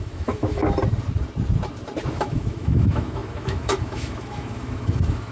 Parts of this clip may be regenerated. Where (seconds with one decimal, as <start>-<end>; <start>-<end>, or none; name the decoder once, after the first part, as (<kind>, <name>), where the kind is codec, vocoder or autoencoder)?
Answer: 0.0-0.6 (autoencoder, DAC-VAE); 2.1-5.3